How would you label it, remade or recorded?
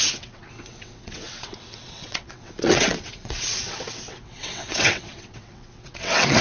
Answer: remade